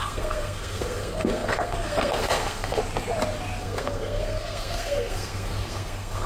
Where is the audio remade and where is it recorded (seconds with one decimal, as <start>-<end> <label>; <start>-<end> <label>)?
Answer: 0.0-2.8 remade; 2.8-3.6 recorded; 3.6-6.3 remade